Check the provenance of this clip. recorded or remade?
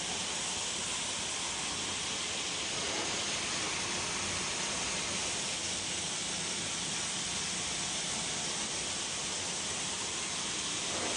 recorded